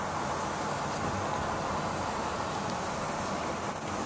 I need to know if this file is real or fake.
real